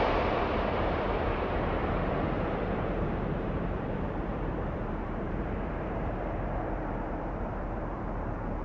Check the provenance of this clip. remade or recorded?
remade